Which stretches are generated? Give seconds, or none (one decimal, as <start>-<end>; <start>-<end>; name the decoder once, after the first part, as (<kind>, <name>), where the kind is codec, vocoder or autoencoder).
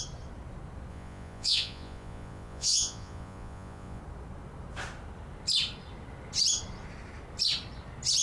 0.9-4.0 (vocoder, Vocos)